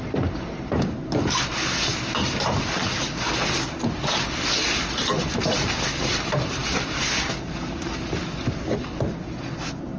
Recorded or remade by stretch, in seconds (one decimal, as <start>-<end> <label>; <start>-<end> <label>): 0.0-10.0 recorded